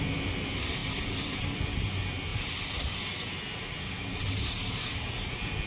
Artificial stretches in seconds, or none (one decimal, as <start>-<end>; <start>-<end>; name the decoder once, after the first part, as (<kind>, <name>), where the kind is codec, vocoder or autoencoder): none